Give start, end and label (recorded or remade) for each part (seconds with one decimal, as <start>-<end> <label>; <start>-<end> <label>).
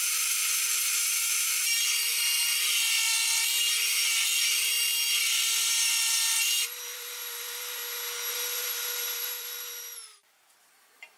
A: 0.0-7.8 remade; 7.8-8.3 recorded; 8.3-11.2 remade